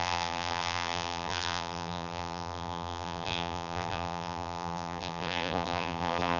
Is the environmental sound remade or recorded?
remade